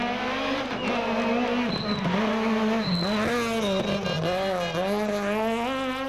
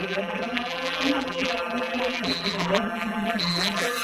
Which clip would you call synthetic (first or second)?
second